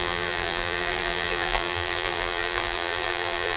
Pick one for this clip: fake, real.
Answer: fake